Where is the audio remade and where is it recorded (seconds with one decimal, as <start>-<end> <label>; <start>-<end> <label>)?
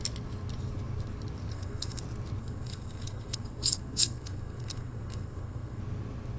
0.0-1.5 recorded; 1.5-2.0 remade; 2.0-2.4 recorded; 2.4-5.8 remade; 5.8-6.4 recorded